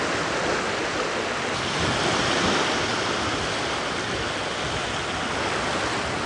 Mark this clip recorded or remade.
recorded